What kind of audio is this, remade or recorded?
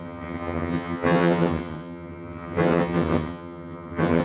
remade